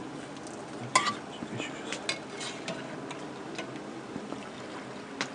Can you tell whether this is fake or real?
real